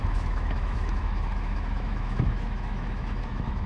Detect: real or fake fake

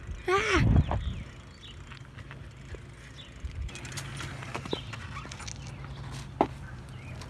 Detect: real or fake real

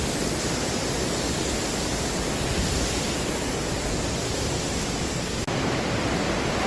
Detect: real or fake real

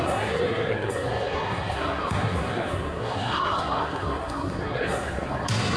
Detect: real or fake fake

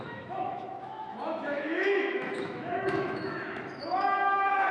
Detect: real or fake fake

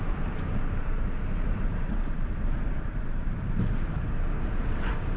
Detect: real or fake fake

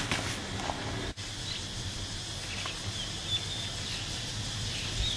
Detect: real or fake real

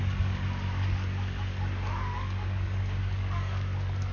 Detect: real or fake fake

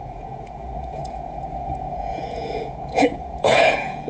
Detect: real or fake fake